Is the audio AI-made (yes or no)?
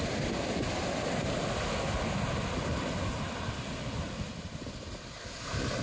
no